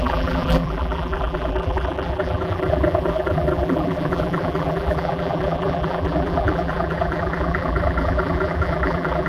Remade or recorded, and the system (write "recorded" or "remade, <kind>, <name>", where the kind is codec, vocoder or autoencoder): remade, vocoder, BigVGAN v2